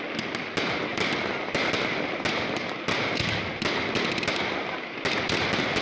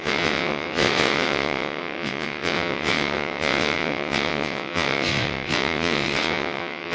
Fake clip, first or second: second